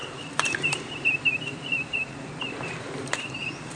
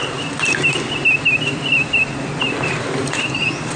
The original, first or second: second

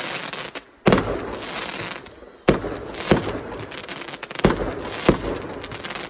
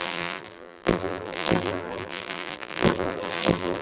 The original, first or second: first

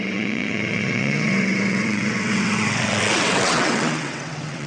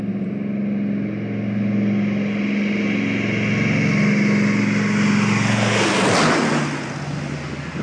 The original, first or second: second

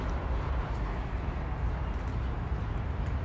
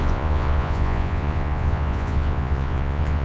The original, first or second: first